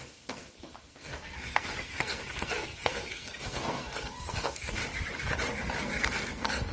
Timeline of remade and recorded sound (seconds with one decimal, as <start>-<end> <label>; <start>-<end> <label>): 0.0-4.8 remade; 4.8-5.8 recorded; 5.8-6.7 remade